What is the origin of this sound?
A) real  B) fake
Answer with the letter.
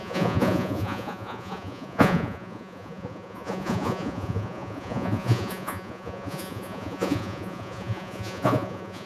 B